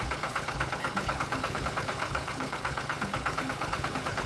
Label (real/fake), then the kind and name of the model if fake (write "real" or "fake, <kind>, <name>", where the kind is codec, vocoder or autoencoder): fake, codec, HILCodec